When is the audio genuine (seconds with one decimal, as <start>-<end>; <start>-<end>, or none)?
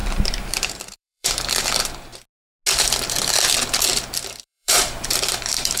2.1-4.4